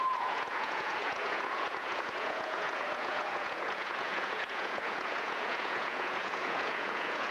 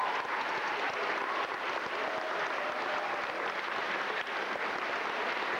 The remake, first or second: first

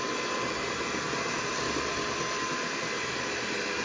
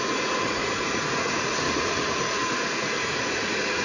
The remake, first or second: second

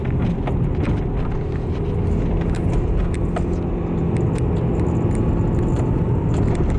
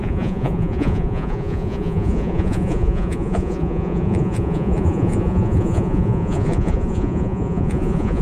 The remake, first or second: second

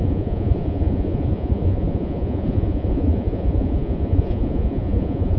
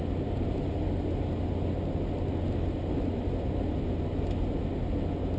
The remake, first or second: first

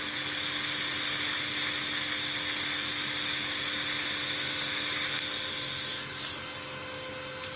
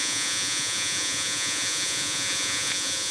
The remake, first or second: second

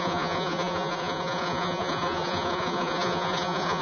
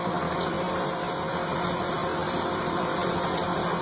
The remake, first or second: first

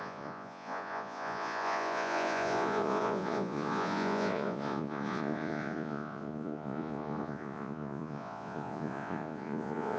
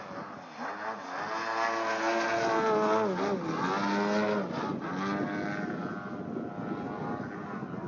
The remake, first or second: first